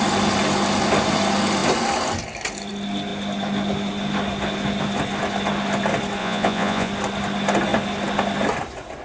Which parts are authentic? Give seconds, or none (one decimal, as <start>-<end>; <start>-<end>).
0.0-6.2; 6.9-9.0